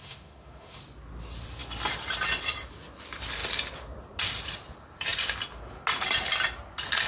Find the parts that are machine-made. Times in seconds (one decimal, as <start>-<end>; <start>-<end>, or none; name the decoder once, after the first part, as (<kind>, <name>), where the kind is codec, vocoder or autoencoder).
0.0-0.8 (autoencoder, DAC-VAE)